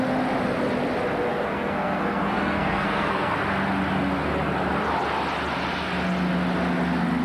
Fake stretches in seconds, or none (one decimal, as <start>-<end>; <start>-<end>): 1.3-3.3